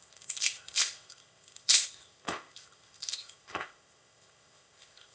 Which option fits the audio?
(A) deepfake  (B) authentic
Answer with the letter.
A